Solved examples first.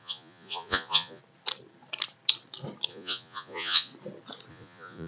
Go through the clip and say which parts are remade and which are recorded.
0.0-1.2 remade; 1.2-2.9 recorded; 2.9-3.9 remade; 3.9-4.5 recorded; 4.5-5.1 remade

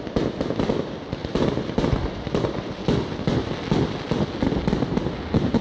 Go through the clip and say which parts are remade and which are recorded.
0.0-5.6 recorded

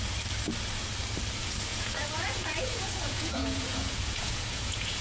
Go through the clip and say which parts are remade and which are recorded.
0.0-1.7 recorded; 1.7-5.0 remade